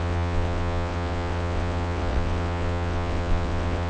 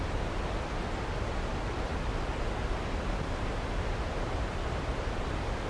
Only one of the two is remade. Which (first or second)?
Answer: first